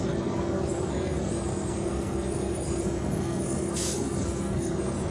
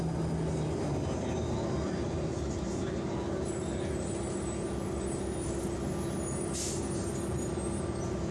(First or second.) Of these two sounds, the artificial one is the first